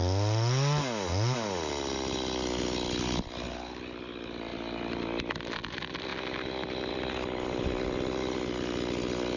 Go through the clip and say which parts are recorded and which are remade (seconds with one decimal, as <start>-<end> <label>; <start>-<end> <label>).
0.0-3.3 recorded; 3.3-6.1 remade; 6.1-6.9 recorded; 6.9-9.4 remade